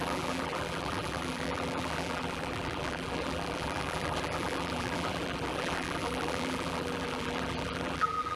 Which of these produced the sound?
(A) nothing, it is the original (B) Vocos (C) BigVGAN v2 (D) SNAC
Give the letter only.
C